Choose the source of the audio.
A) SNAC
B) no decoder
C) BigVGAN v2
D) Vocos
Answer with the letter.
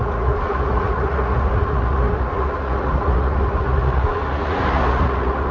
D